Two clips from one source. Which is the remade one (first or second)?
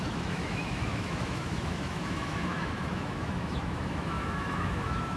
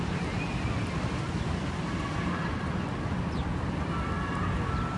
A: first